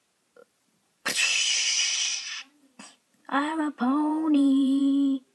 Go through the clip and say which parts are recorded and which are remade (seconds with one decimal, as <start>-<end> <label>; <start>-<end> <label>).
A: 0.0-0.4 recorded; 0.4-3.6 remade; 3.6-4.1 recorded; 4.1-4.8 remade; 4.8-5.3 recorded